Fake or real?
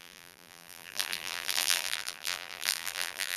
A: fake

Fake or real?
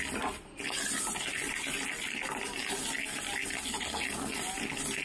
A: real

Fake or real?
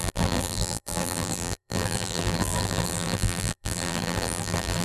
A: fake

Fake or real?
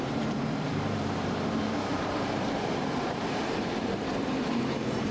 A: fake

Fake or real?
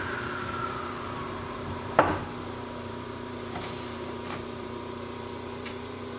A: fake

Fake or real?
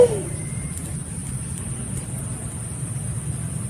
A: real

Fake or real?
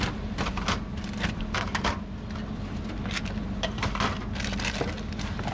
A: real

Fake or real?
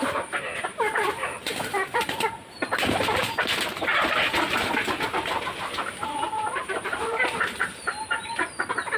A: fake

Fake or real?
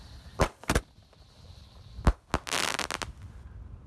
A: real